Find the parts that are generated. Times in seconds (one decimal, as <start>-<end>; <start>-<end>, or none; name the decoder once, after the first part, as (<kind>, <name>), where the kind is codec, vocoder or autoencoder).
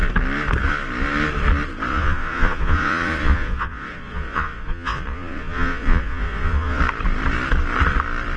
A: 1.9-6.8 (vocoder, Vocos)